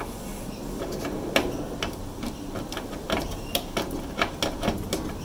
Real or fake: real